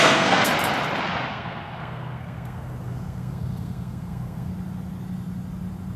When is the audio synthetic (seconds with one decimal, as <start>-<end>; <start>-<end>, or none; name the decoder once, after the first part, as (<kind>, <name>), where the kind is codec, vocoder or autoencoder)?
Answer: 0.0-0.5 (codec, SNAC); 1.3-4.5